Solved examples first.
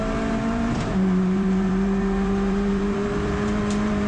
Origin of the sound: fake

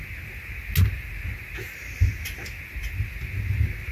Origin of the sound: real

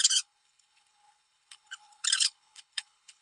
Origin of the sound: fake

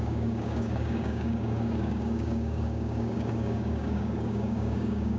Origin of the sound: fake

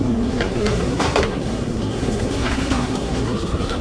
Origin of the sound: fake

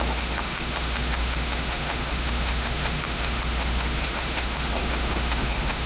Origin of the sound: fake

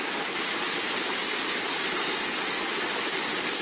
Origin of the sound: real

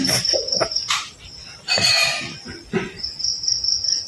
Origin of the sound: real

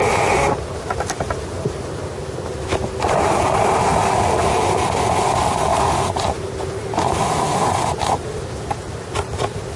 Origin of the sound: real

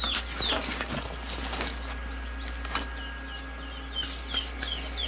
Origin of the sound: real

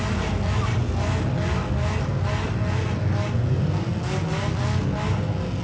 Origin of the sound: real